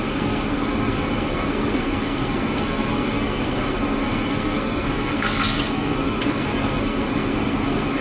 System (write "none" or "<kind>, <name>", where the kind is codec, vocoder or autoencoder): codec, SNAC